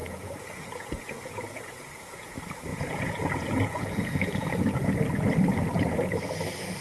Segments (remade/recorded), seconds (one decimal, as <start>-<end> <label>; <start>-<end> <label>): 0.0-2.3 remade; 2.3-2.7 recorded; 2.7-4.9 remade; 4.9-6.8 recorded